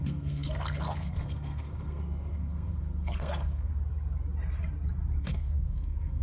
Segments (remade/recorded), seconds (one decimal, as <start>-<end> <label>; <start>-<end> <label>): 0.0-3.7 remade; 3.7-5.2 recorded; 5.2-6.2 remade